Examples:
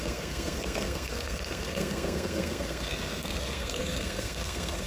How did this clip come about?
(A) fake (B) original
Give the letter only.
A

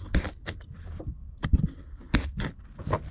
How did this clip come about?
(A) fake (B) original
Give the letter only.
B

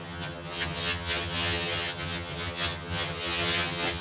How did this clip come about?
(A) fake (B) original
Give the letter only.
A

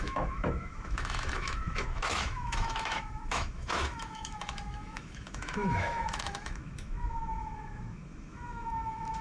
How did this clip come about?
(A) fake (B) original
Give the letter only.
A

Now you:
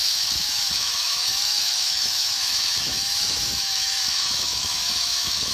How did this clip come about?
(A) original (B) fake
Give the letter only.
B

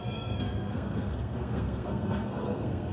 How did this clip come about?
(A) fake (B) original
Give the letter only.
A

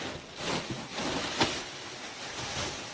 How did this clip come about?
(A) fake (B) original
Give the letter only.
B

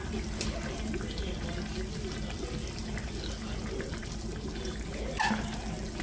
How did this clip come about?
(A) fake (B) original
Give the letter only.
B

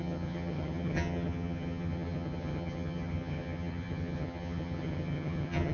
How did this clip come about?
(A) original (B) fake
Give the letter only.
B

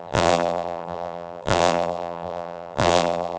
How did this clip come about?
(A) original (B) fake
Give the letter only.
B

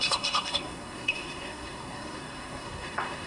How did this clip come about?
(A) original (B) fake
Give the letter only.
B